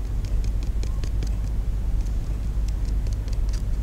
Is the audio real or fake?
real